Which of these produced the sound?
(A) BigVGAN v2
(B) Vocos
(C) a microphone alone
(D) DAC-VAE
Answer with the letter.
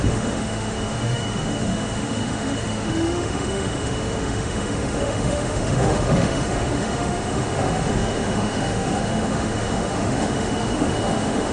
D